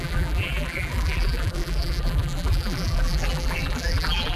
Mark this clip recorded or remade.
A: remade